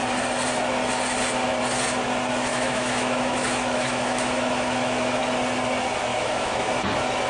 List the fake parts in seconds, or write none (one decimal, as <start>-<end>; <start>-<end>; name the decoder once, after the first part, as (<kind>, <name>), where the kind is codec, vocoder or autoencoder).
2.5-5.2 (autoencoder, DAC-VAE); 6.1-6.7